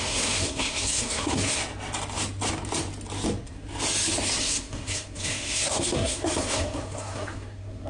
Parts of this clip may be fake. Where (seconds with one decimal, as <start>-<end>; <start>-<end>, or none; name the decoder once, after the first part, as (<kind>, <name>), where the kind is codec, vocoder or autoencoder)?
0.0-1.6 (codec, SNAC); 4.4-7.9